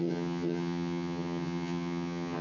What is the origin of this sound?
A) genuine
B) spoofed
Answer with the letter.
B